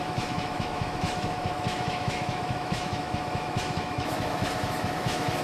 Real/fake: fake